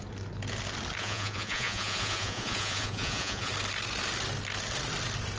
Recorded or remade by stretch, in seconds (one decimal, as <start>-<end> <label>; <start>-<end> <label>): 0.0-1.0 recorded; 1.0-3.5 remade; 3.5-5.4 recorded